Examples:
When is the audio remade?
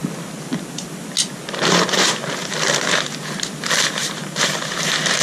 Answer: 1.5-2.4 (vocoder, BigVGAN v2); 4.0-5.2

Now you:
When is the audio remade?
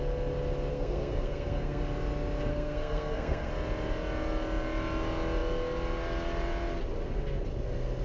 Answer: 0.7-1.8 (codec, SNAC); 2.5-3.5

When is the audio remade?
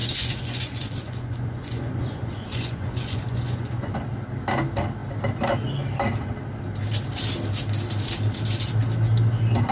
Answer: 0.0-3.9 (vocoder, Vocos)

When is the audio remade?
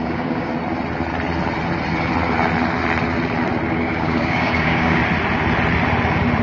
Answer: 0.0-0.5 (codec, DAC); 3.7-5.0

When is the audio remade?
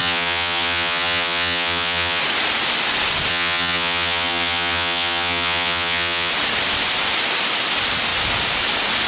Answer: 0.0-2.2 (vocoder, HiFi-GAN); 3.3-6.3